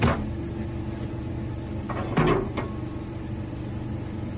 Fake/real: real